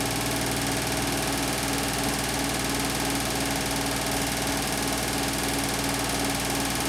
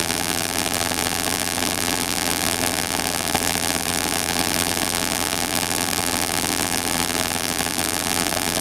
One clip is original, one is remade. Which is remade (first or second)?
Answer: second